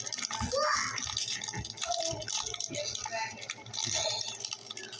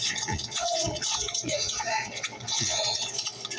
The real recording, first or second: first